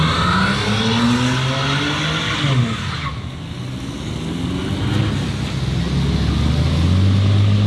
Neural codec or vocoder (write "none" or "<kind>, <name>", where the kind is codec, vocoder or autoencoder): none